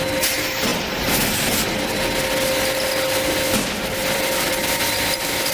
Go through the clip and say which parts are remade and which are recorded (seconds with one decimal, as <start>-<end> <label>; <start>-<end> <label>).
0.0-4.0 recorded; 4.0-4.8 remade; 4.8-5.5 recorded